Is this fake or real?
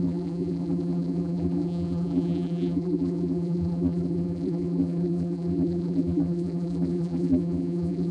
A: fake